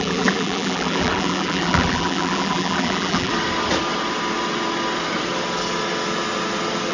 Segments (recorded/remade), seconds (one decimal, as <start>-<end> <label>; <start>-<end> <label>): 0.0-3.3 remade; 3.3-6.9 recorded